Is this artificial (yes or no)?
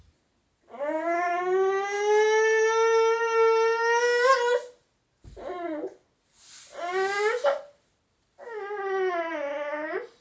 no